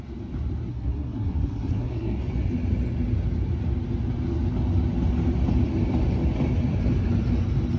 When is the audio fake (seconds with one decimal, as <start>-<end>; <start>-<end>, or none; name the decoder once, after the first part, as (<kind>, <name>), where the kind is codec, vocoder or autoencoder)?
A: 0.7-2.2 (codec, SNAC)